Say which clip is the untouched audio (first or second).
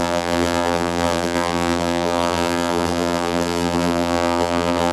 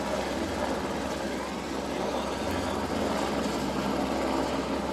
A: second